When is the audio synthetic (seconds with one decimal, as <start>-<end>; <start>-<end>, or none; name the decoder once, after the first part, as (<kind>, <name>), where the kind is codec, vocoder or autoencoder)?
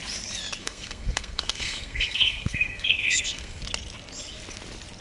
0.6-3.6 (codec, SNAC)